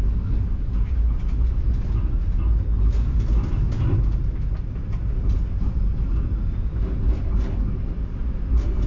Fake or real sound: real